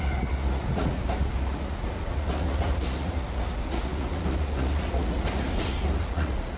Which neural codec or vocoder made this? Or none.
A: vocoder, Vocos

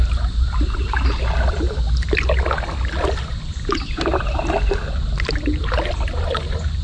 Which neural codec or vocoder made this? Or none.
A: none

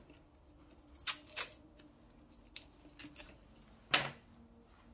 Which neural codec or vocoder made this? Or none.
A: none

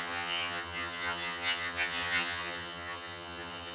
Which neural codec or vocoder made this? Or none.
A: vocoder, HiFi-GAN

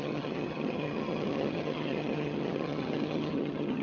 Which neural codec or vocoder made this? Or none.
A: vocoder, HiFi-GAN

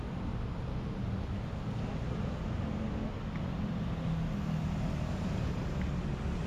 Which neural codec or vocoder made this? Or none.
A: none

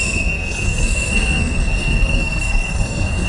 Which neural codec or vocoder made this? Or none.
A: codec, SNAC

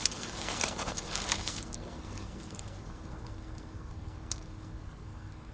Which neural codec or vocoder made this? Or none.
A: codec, SNAC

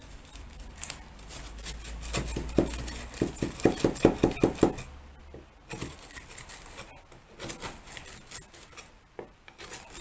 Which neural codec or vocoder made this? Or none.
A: none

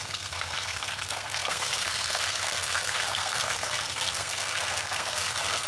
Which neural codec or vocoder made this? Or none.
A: codec, SNAC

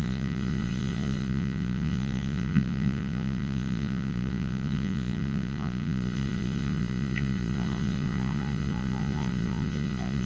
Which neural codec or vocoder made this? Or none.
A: vocoder, Vocos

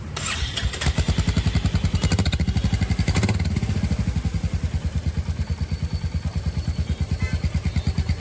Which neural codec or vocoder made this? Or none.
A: none